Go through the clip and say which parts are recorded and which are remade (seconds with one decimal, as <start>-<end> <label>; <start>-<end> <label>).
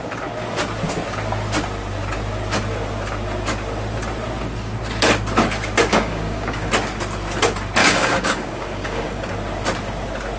0.0-5.9 recorded; 5.9-6.7 remade; 6.7-7.8 recorded; 7.8-9.3 remade; 9.3-10.4 recorded